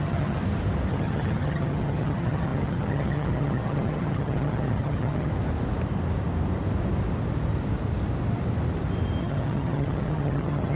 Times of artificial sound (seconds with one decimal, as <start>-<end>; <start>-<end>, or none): 0.0-0.4; 0.9-5.3; 9.2-10.8